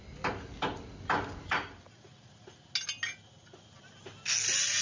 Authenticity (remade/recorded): recorded